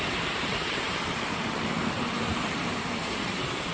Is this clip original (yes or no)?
no